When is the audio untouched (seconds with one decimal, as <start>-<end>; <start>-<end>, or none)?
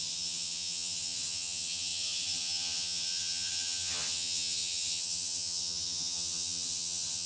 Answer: none